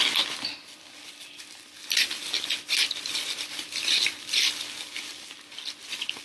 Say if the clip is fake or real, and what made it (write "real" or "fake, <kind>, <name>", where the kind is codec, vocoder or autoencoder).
real